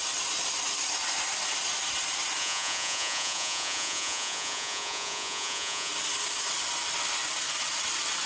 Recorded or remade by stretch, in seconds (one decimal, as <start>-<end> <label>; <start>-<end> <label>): 0.0-2.4 recorded; 2.4-5.9 remade; 5.9-8.3 recorded